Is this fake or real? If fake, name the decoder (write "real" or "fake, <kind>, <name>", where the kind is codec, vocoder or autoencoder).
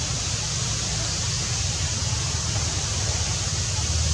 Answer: real